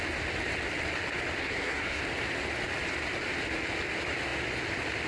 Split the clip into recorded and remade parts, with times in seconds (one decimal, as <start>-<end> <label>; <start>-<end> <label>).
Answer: 0.0-1.4 recorded; 1.4-2.0 remade; 2.0-5.1 recorded